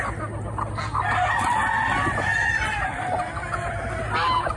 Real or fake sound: real